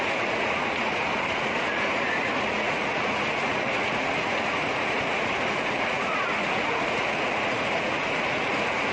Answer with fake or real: fake